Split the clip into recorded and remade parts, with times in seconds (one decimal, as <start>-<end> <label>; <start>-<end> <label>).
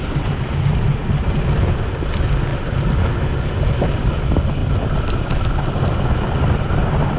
0.0-1.0 recorded; 1.0-1.5 remade; 1.5-7.2 recorded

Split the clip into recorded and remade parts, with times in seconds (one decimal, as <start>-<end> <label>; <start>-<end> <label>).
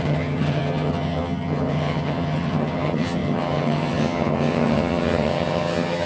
0.0-6.1 remade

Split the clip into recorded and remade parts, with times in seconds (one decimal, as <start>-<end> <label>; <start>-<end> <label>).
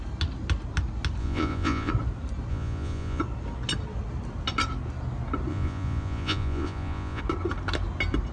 0.0-1.2 recorded; 1.2-1.9 remade; 1.9-2.5 recorded; 2.5-3.2 remade; 3.2-5.5 recorded; 5.5-7.2 remade; 7.2-8.3 recorded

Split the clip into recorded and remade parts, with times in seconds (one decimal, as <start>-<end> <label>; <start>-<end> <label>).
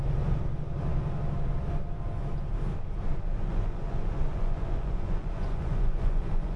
0.0-3.3 recorded; 3.3-6.6 remade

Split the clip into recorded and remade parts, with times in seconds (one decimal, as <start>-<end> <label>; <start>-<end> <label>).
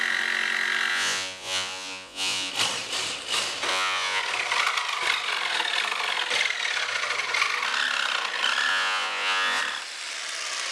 0.0-0.9 recorded; 0.9-2.5 remade; 2.5-3.7 recorded; 3.7-4.2 remade; 4.2-8.7 recorded; 8.7-9.6 remade; 9.6-10.7 recorded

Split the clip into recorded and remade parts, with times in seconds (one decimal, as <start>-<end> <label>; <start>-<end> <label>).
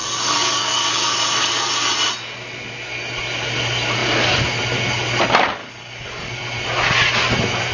0.0-1.7 remade; 1.7-5.6 recorded; 5.6-6.4 remade; 6.4-7.7 recorded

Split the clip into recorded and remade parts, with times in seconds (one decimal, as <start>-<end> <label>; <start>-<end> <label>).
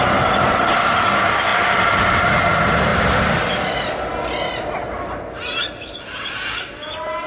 0.0-7.3 recorded